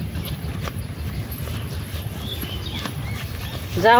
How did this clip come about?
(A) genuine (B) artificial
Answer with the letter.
A